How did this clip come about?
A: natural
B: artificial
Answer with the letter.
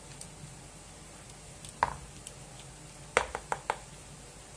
A